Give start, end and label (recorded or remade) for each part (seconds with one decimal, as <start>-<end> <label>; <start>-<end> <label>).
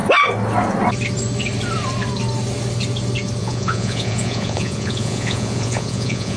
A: 0.0-3.4 recorded; 3.4-6.4 remade